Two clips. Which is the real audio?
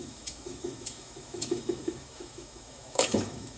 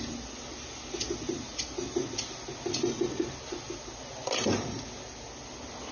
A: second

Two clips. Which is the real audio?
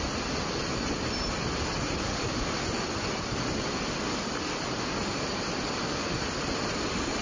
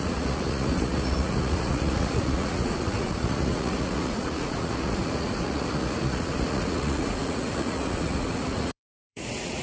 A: first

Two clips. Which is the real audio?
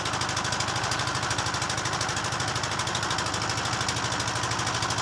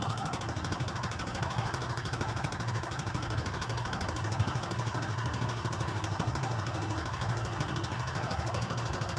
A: first